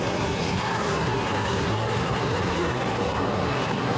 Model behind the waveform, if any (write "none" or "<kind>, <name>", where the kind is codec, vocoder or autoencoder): codec, SNAC